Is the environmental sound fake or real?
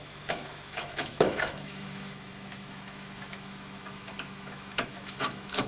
fake